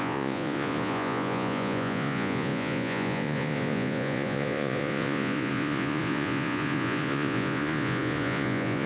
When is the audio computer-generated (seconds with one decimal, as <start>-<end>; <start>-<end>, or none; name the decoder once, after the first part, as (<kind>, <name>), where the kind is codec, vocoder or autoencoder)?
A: 0.0-8.9 (vocoder, Vocos)